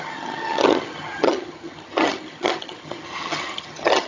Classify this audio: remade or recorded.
remade